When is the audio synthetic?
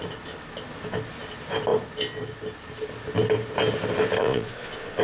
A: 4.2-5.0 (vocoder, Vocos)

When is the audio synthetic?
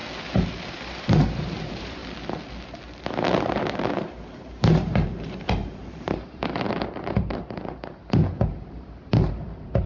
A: 0.7-2.0 (vocoder, BigVGAN v2); 3.4-9.9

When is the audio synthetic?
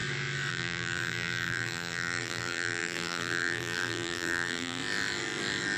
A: 0.5-4.8 (vocoder, BigVGAN v2)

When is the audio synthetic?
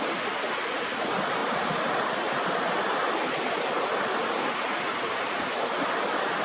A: none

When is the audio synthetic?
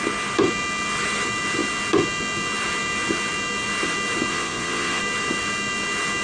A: 4.3-5.0 (vocoder, Vocos)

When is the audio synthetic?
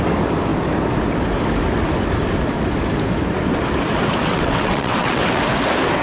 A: 4.3-5.4 (vocoder, WaveNeXt)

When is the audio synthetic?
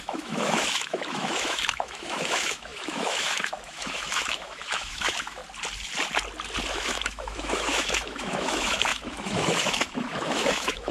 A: 0.0-5.4 (autoencoder, DAC-VAE); 6.7-10.9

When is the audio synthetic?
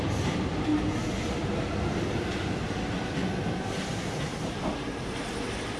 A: 0.0-0.7 (vocoder, BigVGAN v2); 2.5-3.2; 4.2-5.8